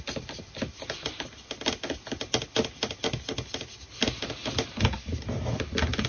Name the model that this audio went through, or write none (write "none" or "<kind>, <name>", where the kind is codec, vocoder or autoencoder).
none